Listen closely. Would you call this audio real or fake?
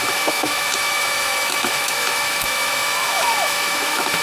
fake